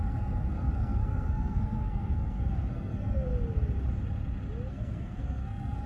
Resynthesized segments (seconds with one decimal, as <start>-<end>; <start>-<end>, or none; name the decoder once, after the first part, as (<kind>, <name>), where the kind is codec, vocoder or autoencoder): 0.0-3.3 (codec, SNAC); 4.7-5.9